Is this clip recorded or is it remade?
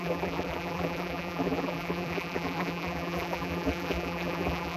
remade